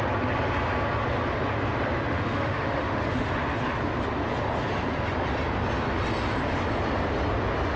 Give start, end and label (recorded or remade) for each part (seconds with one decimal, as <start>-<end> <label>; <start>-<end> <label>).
0.0-2.1 recorded; 2.1-3.3 remade; 3.3-7.8 recorded